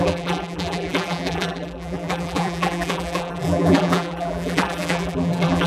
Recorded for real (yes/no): no